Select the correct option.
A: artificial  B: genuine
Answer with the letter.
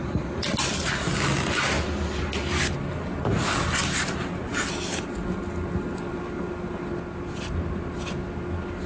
B